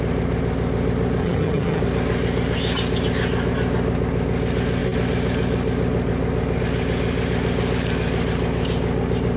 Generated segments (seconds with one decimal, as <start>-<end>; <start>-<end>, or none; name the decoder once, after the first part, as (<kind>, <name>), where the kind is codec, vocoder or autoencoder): 1.2-1.8 (vocoder, HiFi-GAN)